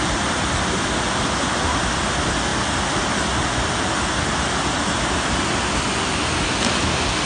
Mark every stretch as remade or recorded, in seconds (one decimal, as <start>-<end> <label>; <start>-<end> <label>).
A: 0.0-7.3 recorded